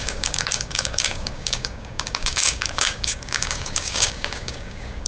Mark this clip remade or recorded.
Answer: remade